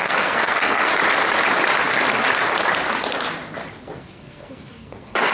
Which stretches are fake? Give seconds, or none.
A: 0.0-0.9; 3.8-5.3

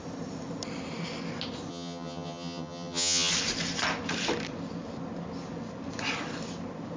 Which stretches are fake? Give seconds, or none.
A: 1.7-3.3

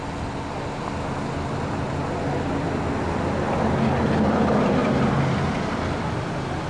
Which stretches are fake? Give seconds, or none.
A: 4.8-5.5